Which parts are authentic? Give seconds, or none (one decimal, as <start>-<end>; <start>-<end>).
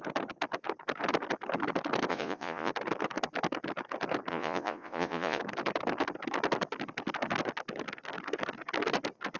0.0-2.1; 2.7-4.3; 5.4-9.4